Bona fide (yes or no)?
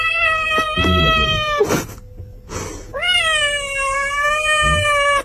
yes